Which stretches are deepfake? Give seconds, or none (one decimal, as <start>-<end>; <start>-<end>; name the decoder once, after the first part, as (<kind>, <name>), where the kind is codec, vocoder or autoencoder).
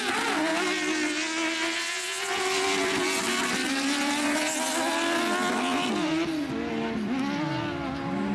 none